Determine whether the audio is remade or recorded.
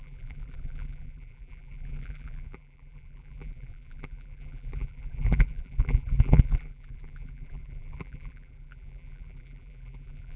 remade